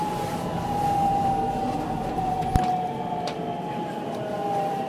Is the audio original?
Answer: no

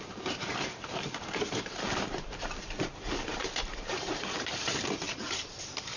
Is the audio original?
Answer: no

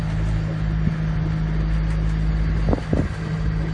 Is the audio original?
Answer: yes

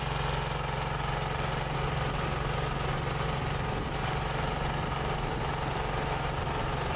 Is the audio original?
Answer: yes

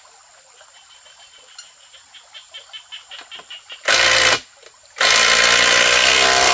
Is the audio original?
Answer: yes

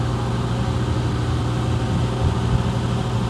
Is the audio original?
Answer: yes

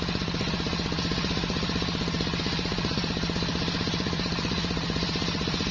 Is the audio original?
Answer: no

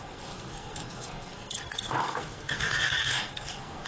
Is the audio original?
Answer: no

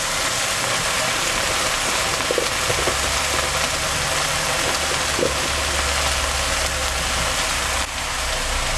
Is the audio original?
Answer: yes